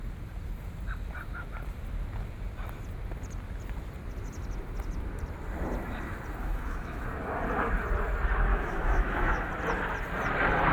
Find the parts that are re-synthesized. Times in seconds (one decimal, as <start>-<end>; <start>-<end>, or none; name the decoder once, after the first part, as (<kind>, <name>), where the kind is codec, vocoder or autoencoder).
6.4-7.0 (autoencoder, DAC-VAE); 8.5-9.5